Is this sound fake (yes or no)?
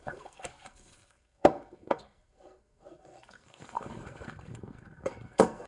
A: yes